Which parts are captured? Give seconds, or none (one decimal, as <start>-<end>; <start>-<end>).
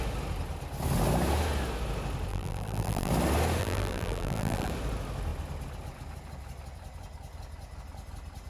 0.0-2.3; 3.1-3.6; 4.7-8.5